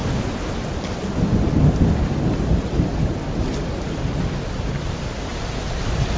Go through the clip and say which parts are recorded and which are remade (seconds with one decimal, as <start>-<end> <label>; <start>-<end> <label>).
0.0-5.3 recorded; 5.3-6.2 remade